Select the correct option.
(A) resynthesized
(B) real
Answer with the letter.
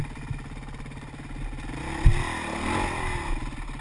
B